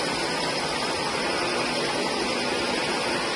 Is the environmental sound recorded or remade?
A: recorded